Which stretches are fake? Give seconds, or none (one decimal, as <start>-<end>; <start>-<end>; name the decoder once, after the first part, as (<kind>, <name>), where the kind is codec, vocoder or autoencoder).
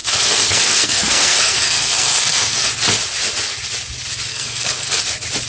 0.0-2.7 (codec, SNAC); 4.3-5.0